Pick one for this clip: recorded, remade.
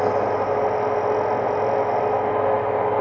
recorded